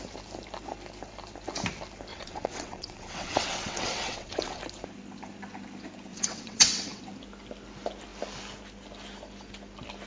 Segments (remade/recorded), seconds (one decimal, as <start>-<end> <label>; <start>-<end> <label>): 0.0-2.1 recorded; 2.1-4.6 remade; 4.6-6.1 recorded; 6.1-7.0 remade; 7.0-10.1 recorded